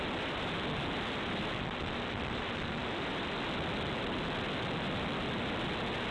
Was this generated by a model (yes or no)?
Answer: yes